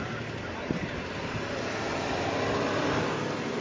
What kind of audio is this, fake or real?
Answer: real